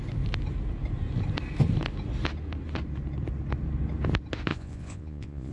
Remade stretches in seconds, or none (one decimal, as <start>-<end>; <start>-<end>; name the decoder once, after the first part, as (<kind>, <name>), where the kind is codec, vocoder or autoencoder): 4.5-5.5 (vocoder, Vocos)